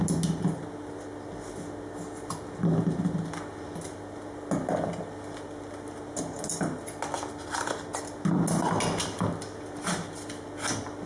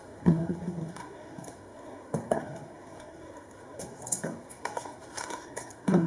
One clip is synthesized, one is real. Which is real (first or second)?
first